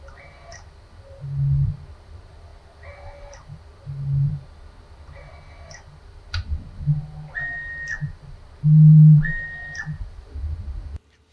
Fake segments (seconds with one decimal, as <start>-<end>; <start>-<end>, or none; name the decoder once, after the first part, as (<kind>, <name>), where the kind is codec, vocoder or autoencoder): none